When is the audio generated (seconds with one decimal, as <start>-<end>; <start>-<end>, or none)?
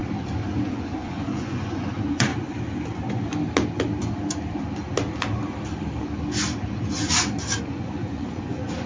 0.6-2.3; 7.6-8.9